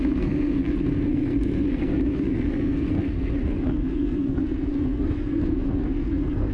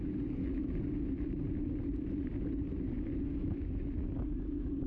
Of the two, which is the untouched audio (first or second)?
second